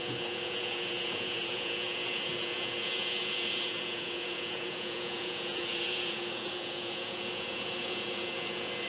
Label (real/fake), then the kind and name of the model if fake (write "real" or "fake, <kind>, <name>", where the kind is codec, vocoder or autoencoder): fake, vocoder, Vocos